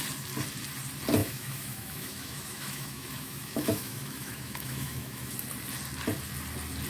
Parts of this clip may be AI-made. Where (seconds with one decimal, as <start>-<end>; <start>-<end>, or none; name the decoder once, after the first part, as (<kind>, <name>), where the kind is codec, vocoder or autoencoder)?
1.2-5.3 (autoencoder, DAC-VAE)